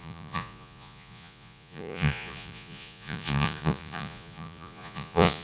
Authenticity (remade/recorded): remade